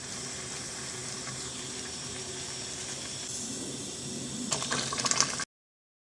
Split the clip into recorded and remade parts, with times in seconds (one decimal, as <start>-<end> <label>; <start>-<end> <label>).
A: 0.0-1.0 recorded; 1.0-4.7 remade; 4.7-6.2 recorded